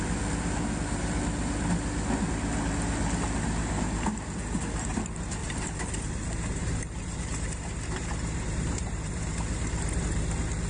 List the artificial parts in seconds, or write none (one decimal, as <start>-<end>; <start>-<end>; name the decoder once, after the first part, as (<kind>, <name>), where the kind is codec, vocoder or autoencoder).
5.4-10.0 (vocoder, BigVGAN v2)